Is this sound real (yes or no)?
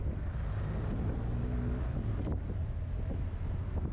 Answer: yes